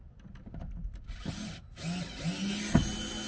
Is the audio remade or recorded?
recorded